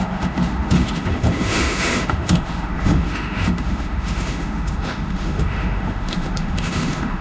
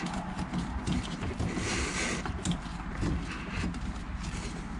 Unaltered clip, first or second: second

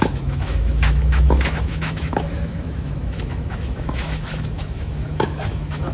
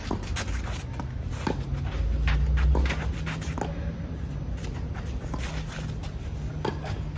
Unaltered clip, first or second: second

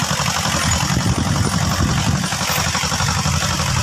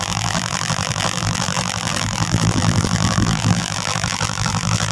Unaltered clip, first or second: first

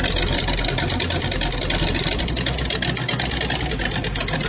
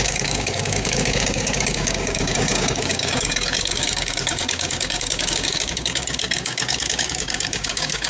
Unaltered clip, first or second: first